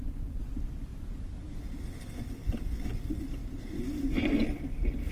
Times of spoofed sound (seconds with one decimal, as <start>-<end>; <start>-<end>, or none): 0.0-0.9; 2.2-5.1